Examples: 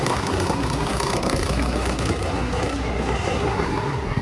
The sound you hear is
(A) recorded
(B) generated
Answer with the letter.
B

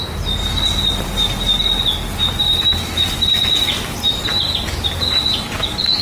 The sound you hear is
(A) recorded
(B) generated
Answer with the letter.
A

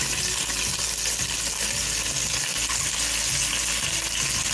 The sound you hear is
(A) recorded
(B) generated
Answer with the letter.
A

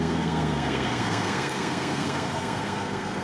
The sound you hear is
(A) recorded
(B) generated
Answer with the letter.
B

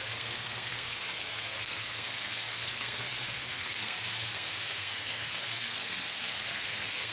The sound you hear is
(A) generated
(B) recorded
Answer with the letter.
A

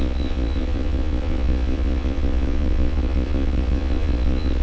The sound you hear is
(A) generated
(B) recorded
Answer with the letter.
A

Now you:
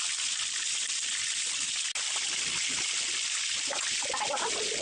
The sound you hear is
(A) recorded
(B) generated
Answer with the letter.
A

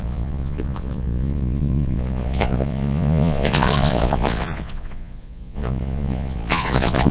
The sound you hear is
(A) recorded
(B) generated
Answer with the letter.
B